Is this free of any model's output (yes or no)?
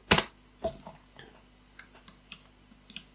yes